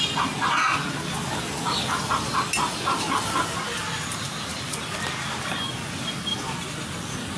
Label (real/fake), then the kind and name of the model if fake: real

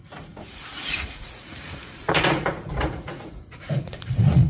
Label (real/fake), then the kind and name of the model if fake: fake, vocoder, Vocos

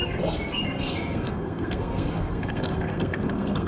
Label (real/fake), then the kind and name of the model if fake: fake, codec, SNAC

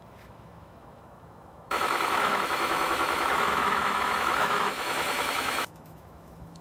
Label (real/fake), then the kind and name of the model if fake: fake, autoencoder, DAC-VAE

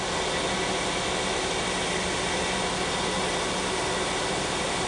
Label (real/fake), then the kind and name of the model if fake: real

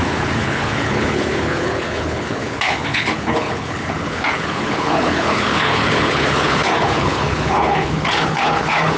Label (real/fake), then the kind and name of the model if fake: fake, codec, HILCodec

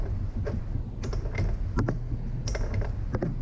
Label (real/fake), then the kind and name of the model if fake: real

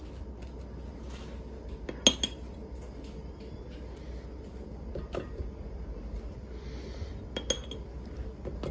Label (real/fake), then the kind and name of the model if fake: real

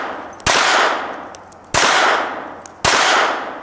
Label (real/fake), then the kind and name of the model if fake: real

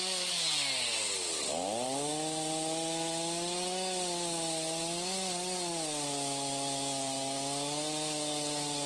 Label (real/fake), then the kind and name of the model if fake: real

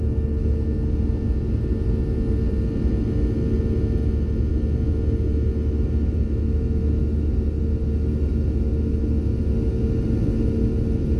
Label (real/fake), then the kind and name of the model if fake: real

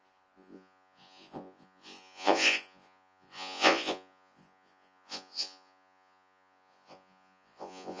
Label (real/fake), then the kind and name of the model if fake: fake, vocoder, Vocos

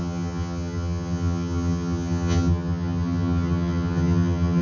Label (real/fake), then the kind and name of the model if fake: fake, vocoder, HiFi-GAN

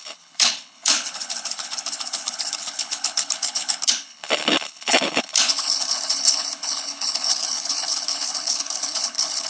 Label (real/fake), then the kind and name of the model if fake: fake, codec, HILCodec